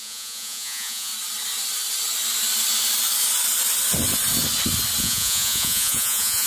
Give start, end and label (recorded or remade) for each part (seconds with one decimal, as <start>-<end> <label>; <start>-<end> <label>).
0.0-1.1 remade; 1.1-5.0 recorded; 5.0-6.5 remade

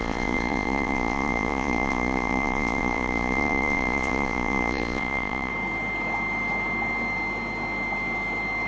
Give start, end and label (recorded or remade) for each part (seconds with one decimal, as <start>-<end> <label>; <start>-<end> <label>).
0.0-5.5 remade; 5.5-8.7 recorded

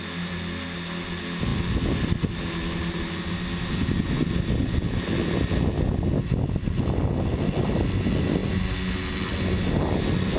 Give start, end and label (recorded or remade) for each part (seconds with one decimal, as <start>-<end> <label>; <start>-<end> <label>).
0.0-10.4 recorded

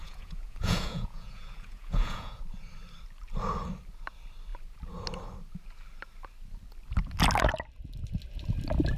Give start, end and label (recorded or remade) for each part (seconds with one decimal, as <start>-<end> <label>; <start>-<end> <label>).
0.0-2.4 remade; 2.4-9.0 recorded

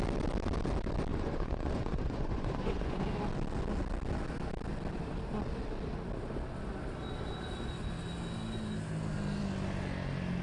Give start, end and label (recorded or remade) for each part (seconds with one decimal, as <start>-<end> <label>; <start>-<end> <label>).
0.0-1.1 recorded; 1.1-3.0 remade; 3.0-10.4 recorded